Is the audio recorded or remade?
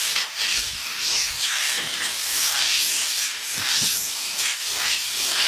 remade